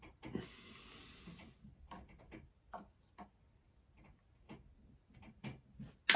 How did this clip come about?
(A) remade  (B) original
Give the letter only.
B